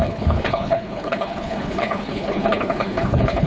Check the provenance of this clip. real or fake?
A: fake